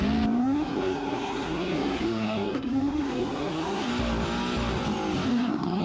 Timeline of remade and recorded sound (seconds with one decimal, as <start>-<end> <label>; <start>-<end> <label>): 0.0-0.4 recorded; 0.4-3.9 remade; 3.9-5.3 recorded; 5.3-5.8 remade